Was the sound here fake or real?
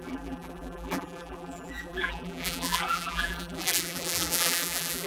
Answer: fake